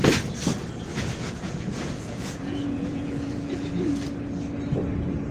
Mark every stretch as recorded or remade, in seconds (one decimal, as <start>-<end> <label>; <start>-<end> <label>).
0.0-0.9 recorded; 0.9-3.7 remade; 3.7-5.3 recorded